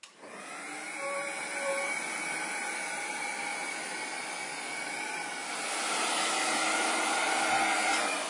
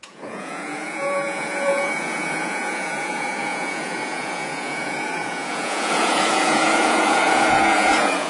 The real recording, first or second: first